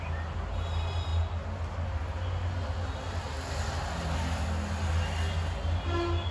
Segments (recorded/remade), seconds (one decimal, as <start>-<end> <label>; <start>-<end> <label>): 0.0-6.3 recorded